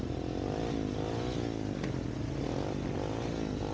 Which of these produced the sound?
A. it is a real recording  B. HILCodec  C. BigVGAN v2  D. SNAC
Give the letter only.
A